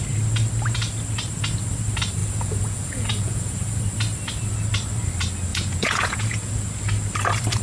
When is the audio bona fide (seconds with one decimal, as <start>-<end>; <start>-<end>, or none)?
0.0-2.2; 3.8-5.5; 6.7-7.6